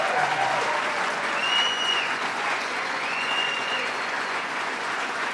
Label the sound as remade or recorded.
remade